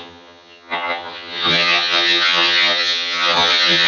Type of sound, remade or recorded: remade